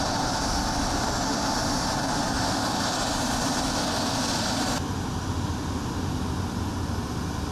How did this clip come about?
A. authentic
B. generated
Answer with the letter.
A